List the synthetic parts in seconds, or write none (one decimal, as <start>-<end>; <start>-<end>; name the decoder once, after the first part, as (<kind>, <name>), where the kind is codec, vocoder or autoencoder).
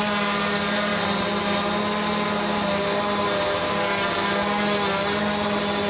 none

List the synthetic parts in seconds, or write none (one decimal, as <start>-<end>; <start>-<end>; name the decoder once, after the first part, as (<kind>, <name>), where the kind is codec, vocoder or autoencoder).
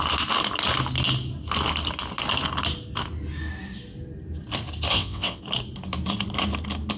4.9-5.4 (vocoder, WaveNeXt)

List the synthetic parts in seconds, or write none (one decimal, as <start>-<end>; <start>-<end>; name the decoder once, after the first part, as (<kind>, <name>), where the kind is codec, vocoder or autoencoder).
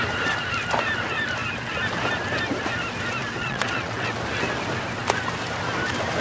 3.2-4.2 (vocoder, WaveNeXt)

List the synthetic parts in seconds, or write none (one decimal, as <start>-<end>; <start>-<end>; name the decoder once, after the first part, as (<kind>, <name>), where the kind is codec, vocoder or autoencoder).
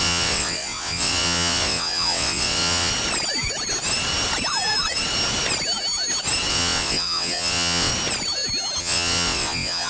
0.0-2.9 (vocoder, WaveNeXt); 6.5-7.9; 8.8-9.9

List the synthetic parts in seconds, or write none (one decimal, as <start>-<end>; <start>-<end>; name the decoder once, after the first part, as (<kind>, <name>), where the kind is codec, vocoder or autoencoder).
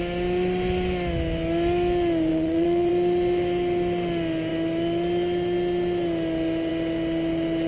2.3-2.9 (vocoder, WaveNeXt)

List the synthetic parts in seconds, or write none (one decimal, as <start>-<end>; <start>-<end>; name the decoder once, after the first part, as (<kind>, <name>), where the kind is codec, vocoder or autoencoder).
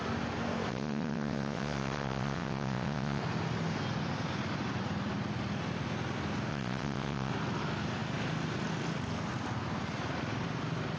0.7-3.2 (vocoder, WaveNeXt); 6.5-7.3